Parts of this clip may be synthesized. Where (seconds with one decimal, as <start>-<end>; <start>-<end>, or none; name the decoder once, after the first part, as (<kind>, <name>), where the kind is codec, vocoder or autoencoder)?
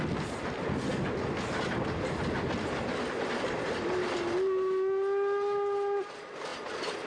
none